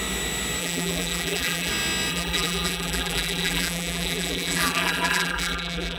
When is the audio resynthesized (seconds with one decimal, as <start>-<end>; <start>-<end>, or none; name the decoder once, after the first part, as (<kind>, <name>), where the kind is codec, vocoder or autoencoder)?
0.6-1.7 (vocoder, BigVGAN v2); 2.1-6.0